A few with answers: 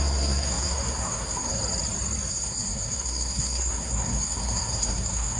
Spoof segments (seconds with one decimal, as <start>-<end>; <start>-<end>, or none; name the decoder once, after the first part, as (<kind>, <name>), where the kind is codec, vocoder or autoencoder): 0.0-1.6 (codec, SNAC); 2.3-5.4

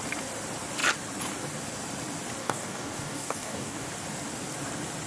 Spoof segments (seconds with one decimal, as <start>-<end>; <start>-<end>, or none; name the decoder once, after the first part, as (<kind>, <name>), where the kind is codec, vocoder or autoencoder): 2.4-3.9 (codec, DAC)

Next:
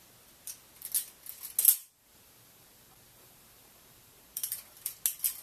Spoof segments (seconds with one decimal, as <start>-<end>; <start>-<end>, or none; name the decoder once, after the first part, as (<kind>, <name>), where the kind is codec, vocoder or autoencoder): 1.8-5.0 (vocoder, BigVGAN v2)

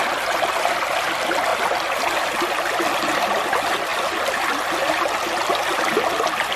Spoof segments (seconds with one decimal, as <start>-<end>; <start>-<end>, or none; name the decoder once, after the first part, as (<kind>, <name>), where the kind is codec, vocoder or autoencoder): none

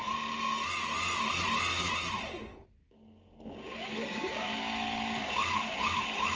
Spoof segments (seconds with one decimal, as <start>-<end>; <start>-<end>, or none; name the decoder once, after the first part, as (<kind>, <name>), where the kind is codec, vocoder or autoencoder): 2.5-6.4 (codec, DAC)

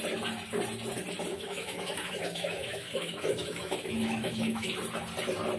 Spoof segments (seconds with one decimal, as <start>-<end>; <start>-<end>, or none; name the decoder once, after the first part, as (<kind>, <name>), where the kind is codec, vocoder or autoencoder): 1.3-4.7 (autoencoder, DAC-VAE)

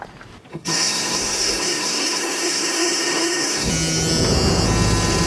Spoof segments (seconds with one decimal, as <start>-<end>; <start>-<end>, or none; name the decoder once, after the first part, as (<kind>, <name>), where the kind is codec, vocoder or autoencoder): 0.5-3.7 (codec, SNAC)

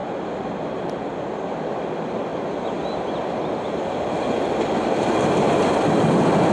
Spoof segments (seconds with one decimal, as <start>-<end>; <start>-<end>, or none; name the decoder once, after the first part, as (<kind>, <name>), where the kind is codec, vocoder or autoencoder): none